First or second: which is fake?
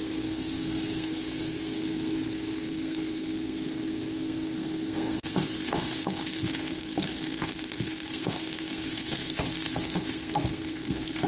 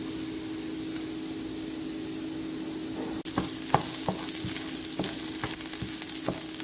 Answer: first